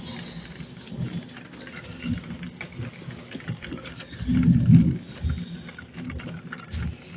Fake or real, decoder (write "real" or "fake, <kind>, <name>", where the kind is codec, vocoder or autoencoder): real